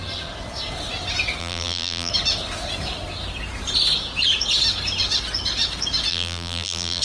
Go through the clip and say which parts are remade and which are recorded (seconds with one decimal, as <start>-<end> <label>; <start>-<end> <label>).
0.0-1.4 recorded; 1.4-2.1 remade; 2.1-6.1 recorded; 6.1-7.0 remade